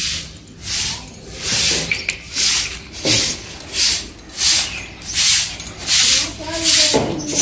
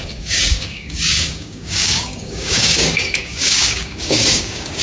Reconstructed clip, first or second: second